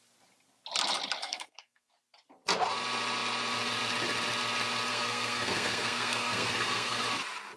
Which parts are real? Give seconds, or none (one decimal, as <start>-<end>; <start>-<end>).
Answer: 0.0-1.2; 1.9-4.9; 7.0-7.6